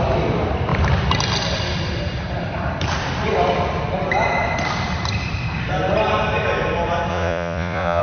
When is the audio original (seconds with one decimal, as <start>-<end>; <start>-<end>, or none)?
0.0-7.1